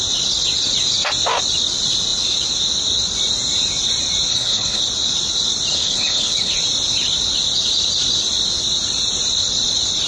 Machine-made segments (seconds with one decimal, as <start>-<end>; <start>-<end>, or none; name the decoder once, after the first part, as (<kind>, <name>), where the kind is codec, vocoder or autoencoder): 4.3-4.8 (codec, HILCodec); 5.7-6.5

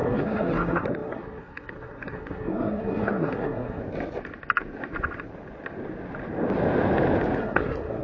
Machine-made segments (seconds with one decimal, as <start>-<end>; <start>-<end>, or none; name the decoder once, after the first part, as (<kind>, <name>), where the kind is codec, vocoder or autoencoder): 0.0-3.8 (codec, SNAC); 7.4-8.0

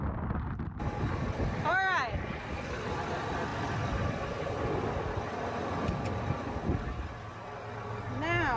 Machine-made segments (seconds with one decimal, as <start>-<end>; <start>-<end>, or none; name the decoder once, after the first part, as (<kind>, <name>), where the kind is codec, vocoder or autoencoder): none

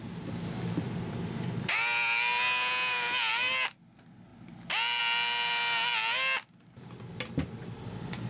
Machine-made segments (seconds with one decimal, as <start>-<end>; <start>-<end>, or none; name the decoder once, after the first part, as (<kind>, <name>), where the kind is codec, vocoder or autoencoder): none

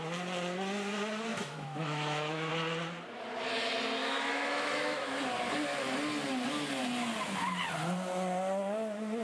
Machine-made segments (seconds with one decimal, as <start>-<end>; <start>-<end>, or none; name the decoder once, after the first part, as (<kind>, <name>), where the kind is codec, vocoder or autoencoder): 1.3-2.5 (autoencoder, DAC-VAE); 4.0-5.2

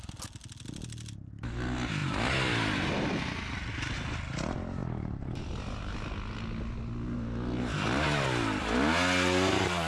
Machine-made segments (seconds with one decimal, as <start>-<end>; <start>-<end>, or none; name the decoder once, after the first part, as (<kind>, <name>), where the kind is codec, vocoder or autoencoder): none

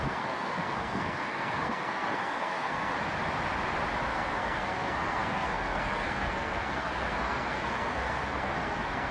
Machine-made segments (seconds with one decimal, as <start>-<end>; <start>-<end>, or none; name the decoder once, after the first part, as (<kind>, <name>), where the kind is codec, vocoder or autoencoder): 0.0-2.9 (codec, SNAC); 4.1-9.1